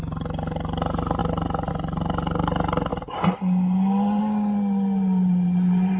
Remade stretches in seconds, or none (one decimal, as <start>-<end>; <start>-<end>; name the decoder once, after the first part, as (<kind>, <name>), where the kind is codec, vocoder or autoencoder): none